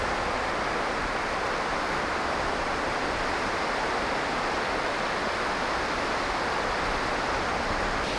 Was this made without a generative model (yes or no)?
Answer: yes